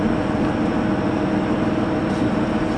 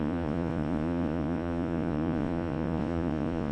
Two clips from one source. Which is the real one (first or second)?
first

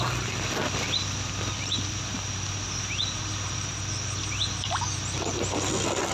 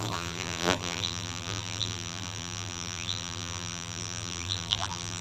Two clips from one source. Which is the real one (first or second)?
first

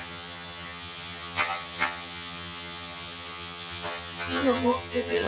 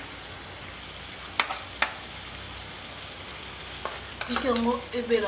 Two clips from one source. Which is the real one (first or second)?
second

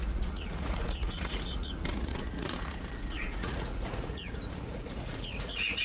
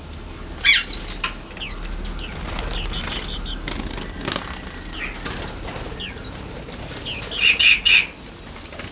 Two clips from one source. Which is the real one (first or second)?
second